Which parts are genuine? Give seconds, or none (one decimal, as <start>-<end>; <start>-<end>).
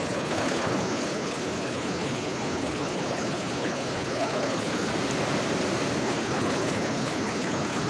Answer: 4.9-6.0